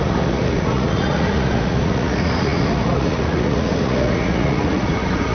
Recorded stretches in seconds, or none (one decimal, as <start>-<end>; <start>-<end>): none